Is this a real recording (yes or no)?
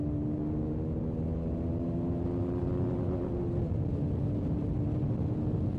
yes